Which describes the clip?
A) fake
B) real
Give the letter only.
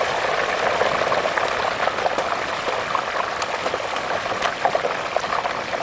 B